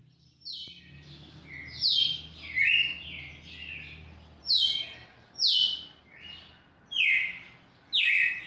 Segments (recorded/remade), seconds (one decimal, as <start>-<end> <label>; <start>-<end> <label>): 0.0-8.5 recorded